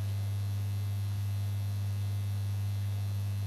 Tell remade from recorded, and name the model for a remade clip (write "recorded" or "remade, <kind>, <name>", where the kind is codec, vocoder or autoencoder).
recorded